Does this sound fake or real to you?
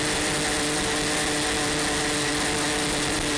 real